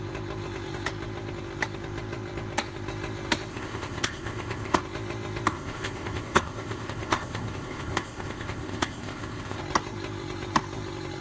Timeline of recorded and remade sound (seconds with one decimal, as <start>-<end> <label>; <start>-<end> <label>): 0.0-3.5 recorded; 3.5-4.8 remade; 4.8-5.5 recorded; 5.5-9.6 remade; 9.6-11.2 recorded